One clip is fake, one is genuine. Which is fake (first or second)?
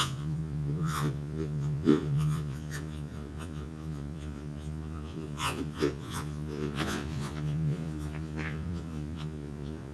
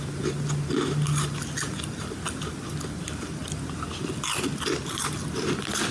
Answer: first